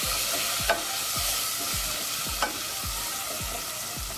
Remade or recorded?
recorded